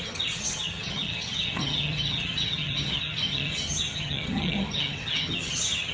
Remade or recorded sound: remade